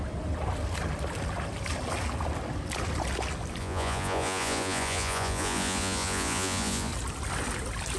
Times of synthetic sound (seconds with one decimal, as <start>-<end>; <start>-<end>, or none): 3.6-6.9